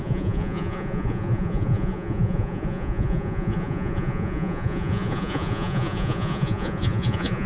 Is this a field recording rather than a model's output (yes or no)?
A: no